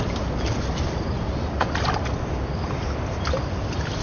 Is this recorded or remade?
recorded